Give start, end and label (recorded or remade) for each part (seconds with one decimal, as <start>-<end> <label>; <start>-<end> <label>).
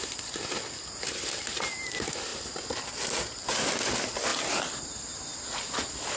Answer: 0.0-6.2 recorded